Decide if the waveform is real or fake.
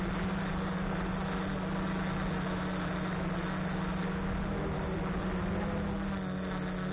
real